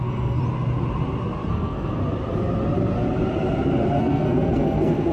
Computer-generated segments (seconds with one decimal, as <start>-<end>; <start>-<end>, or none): 0.0-0.4; 1.5-2.0; 4.0-5.1